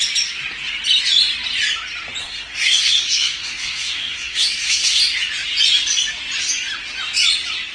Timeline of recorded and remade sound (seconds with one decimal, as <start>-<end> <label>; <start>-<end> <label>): 0.0-2.2 recorded; 2.2-5.0 remade; 5.0-7.7 recorded